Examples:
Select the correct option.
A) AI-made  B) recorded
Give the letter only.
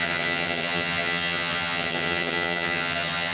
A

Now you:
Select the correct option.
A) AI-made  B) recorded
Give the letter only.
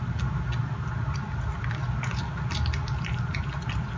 B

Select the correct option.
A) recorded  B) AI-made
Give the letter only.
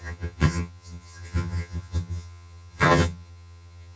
B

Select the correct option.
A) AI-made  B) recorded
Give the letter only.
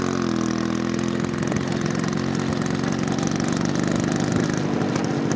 B